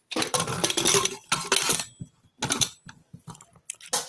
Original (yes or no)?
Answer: yes